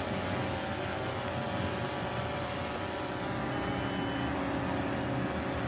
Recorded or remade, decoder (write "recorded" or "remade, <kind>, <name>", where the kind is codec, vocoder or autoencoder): recorded